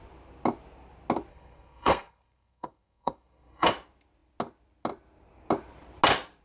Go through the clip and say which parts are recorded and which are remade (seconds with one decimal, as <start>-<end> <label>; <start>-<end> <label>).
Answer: 0.0-1.3 recorded; 1.3-3.7 remade; 3.7-6.4 recorded

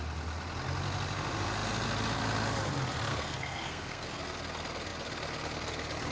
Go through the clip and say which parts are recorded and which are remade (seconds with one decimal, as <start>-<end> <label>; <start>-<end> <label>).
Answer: 0.0-3.1 recorded; 3.1-4.2 remade; 4.2-6.1 recorded

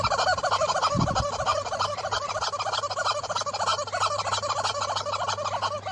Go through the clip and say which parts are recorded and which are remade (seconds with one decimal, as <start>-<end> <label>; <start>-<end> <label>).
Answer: 0.0-1.5 recorded; 1.5-2.3 remade; 2.3-5.9 recorded

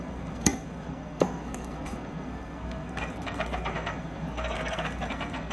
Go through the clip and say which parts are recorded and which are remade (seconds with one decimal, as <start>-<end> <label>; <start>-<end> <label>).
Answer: 0.0-5.5 remade

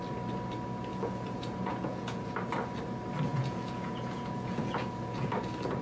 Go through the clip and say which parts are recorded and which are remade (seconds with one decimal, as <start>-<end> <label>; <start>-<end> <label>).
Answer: 0.0-0.9 recorded; 0.9-2.3 remade; 2.3-3.3 recorded; 3.3-5.3 remade; 5.3-5.8 recorded

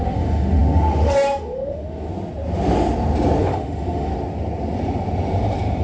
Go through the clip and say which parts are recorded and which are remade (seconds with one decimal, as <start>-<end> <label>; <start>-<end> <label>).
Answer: 0.0-2.1 remade; 2.1-3.4 recorded; 3.4-4.1 remade; 4.1-5.8 recorded

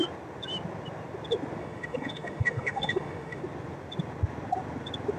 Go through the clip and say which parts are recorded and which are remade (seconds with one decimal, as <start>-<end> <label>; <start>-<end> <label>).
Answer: 0.0-1.6 recorded; 1.6-3.4 remade; 3.4-5.2 recorded

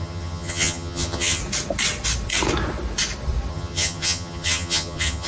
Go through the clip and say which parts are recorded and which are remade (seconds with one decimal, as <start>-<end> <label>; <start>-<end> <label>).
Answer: 0.0-1.4 remade; 1.4-3.5 recorded; 3.5-5.3 remade